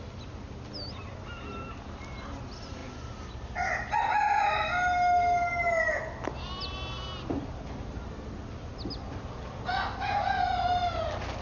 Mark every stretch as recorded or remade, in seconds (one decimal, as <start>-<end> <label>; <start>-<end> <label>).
0.0-11.4 recorded